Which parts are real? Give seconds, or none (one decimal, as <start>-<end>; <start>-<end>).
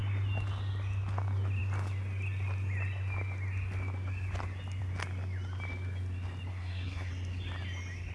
0.0-6.5; 7.1-8.1